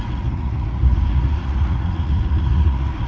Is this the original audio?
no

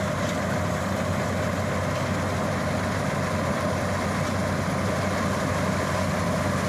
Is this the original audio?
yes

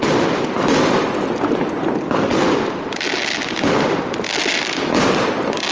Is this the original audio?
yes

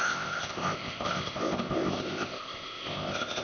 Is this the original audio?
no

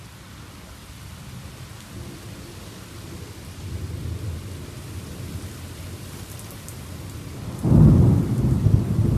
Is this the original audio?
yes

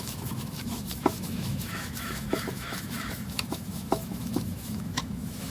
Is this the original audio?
no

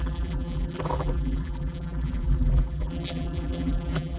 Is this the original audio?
no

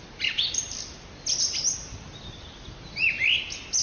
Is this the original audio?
yes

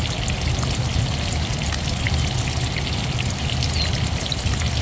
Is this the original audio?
yes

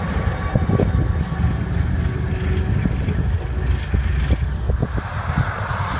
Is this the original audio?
yes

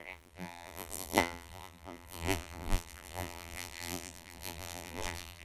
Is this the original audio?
no